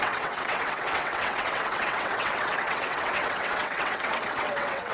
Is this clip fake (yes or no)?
yes